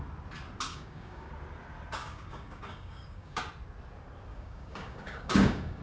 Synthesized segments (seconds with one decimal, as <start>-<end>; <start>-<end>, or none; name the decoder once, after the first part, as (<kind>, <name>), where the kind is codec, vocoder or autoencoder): 0.7-1.3 (codec, DAC); 2.0-3.4; 4.3-5.8